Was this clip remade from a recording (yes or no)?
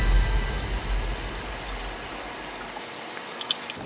no